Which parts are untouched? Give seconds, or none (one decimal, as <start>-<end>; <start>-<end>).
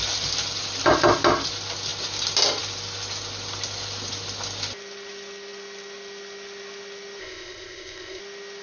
0.0-7.2; 8.2-8.6